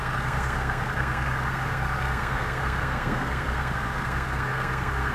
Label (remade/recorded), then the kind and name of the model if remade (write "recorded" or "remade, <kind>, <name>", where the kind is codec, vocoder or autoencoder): remade, codec, SNAC